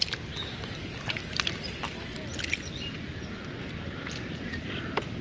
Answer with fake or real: real